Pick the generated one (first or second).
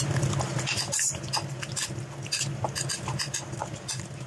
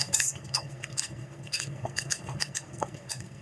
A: second